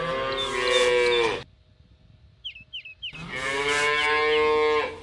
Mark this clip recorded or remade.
recorded